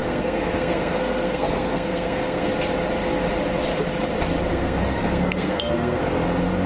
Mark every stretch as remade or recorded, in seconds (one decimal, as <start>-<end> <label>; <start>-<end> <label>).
0.0-2.5 remade; 2.5-4.5 recorded; 4.5-6.0 remade; 6.0-6.7 recorded